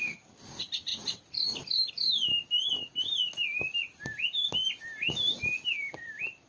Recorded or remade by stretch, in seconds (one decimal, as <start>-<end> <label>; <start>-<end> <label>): 0.0-6.5 recorded